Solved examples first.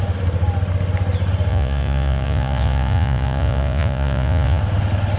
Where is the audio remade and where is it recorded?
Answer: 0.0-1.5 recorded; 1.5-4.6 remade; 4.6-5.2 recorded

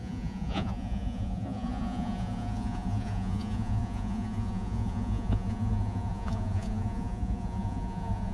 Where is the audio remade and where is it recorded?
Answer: 0.0-8.3 remade

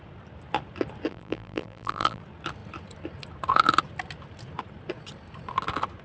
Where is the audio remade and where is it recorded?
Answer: 0.0-1.1 recorded; 1.1-2.2 remade; 2.2-6.0 recorded

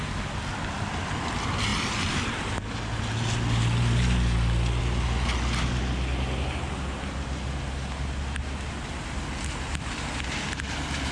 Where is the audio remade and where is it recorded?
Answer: 0.0-11.1 recorded

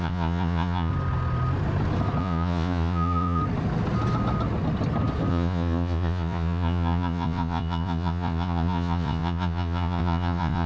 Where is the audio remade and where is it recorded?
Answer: 0.0-0.9 remade; 0.9-2.2 recorded; 2.2-3.4 remade; 3.4-5.3 recorded; 5.3-10.7 remade

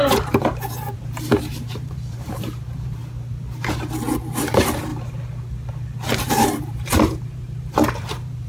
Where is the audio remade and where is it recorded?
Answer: 0.0-3.0 remade; 3.0-4.2 recorded; 4.2-4.9 remade; 4.9-6.3 recorded; 6.3-8.5 remade

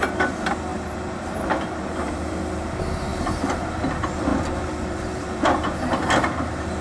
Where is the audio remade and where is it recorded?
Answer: 0.0-0.7 recorded; 0.7-2.5 remade; 2.5-3.1 recorded; 3.1-3.7 remade; 3.7-4.3 recorded; 4.3-5.4 remade; 5.4-6.8 recorded

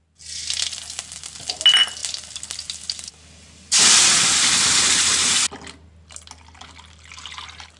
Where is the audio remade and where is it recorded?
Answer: 0.0-7.8 recorded